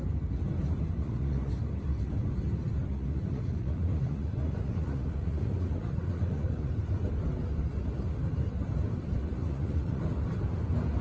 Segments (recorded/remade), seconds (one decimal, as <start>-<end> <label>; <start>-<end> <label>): 0.0-1.0 recorded; 1.0-1.5 remade; 1.5-2.9 recorded; 2.9-6.7 remade; 6.7-9.2 recorded; 9.2-10.0 remade; 10.0-11.0 recorded

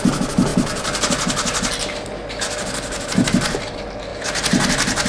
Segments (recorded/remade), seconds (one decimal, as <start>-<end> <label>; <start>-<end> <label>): 0.0-5.1 recorded

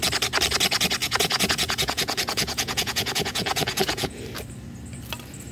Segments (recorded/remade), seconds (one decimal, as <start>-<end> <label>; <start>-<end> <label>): 0.0-1.0 recorded; 1.0-4.2 remade; 4.2-5.5 recorded

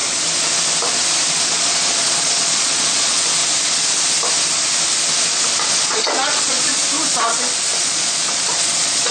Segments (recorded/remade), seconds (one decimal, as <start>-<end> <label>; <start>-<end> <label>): 0.0-1.5 recorded; 1.5-3.4 remade; 3.4-5.8 recorded; 5.8-6.8 remade; 6.8-7.8 recorded; 7.8-9.1 remade

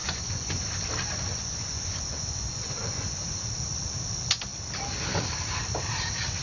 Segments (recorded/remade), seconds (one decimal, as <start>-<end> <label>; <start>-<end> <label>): 0.0-0.8 remade; 0.8-1.3 recorded; 1.3-3.3 remade; 3.3-6.4 recorded

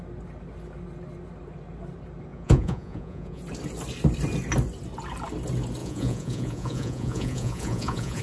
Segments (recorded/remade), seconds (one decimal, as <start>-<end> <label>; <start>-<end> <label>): 0.0-2.3 recorded; 2.3-3.4 remade; 3.4-5.8 recorded; 5.8-8.2 remade

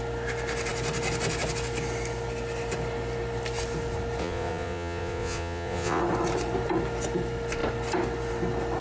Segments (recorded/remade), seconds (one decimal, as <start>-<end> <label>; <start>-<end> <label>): 0.0-4.2 recorded; 4.2-6.0 remade; 6.0-8.8 recorded

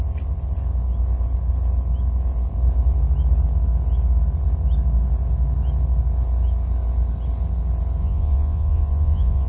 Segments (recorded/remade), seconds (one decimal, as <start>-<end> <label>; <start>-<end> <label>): 0.0-8.0 recorded; 8.0-9.5 remade